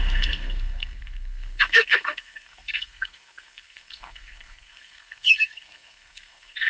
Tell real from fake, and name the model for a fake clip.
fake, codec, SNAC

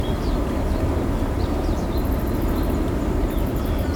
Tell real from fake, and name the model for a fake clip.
real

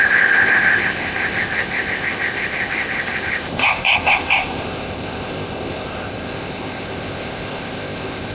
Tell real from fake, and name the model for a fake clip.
fake, codec, ZipCodec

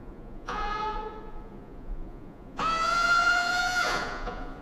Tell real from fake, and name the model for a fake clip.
fake, vocoder, Vocos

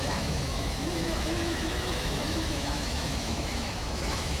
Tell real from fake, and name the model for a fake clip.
fake, autoencoder, DAC-VAE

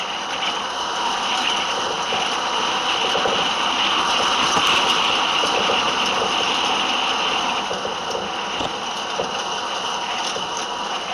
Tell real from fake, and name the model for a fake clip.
real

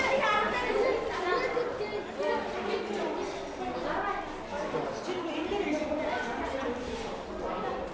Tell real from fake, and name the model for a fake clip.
real